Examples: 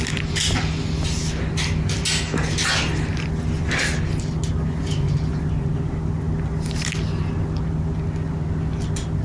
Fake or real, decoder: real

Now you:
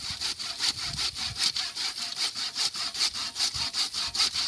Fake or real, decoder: real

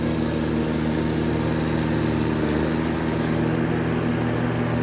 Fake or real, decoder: real